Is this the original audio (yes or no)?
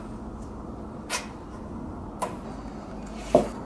yes